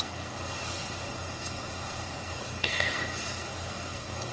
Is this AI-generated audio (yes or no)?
yes